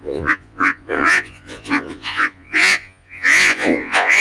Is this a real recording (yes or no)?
no